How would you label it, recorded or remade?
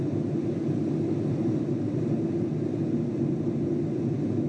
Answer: recorded